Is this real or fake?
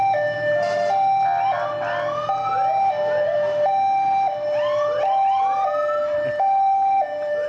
real